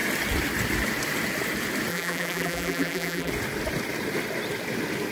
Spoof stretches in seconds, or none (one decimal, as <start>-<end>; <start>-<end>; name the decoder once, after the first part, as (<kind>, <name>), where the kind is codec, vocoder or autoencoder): 1.9-3.3 (vocoder, BigVGAN v2)